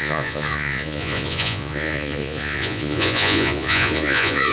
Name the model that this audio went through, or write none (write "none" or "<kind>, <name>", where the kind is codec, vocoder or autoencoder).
vocoder, Vocos